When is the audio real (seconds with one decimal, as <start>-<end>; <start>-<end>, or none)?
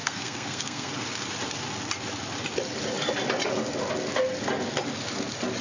0.9-5.6